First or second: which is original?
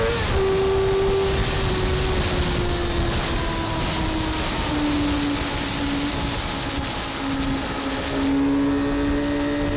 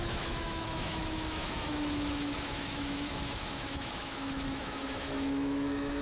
first